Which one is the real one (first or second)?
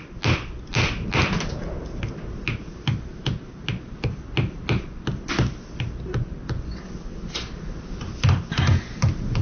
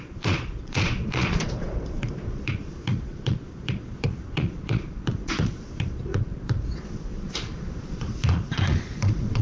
first